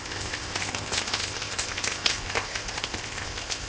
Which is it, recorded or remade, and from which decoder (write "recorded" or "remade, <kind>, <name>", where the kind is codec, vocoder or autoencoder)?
remade, codec, ZipCodec